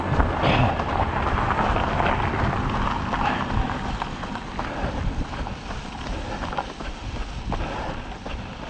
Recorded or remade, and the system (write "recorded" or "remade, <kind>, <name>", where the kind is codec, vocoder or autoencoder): recorded